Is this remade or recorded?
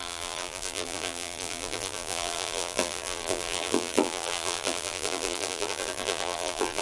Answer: remade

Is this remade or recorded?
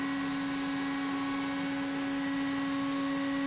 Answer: recorded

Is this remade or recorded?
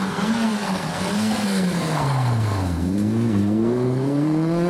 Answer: remade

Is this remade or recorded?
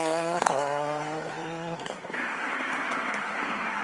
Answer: remade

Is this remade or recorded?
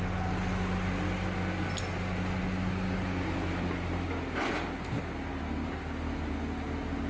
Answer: recorded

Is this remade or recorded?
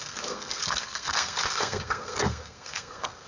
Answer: remade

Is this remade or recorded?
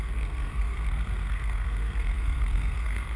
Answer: remade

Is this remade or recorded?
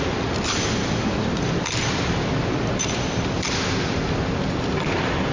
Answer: recorded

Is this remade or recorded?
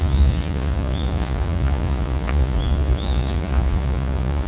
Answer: remade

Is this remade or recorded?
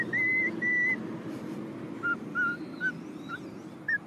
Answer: recorded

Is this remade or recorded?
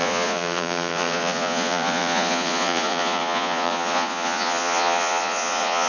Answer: remade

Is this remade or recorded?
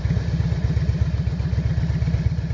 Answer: recorded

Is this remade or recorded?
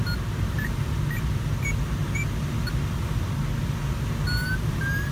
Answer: recorded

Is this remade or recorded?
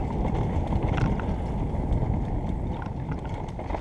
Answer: recorded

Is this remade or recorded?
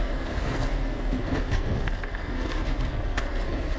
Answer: remade